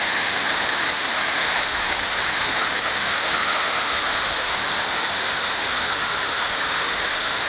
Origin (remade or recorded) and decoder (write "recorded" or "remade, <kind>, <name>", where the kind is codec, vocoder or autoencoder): remade, autoencoder, DAC-VAE